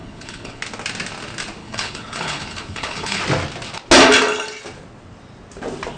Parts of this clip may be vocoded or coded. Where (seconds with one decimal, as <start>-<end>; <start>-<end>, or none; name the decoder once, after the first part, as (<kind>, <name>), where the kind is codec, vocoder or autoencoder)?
0.0-0.6 (codec, HILCodec); 1.6-3.2